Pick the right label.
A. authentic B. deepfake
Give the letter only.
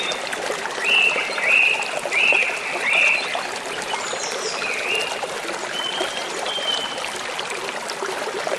A